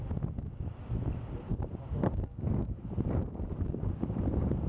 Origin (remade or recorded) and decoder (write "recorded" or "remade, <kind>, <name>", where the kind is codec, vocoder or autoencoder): recorded